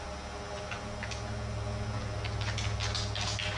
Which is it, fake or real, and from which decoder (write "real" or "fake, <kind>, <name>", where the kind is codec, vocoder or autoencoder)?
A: real